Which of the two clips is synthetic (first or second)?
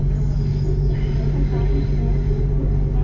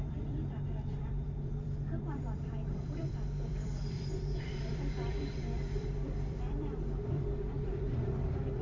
second